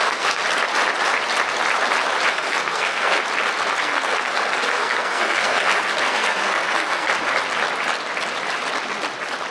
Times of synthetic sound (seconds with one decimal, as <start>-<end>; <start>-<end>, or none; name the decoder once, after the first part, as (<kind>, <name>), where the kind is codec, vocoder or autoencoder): 0.0-0.4 (codec, SNAC); 2.3-3.2; 3.8-7.1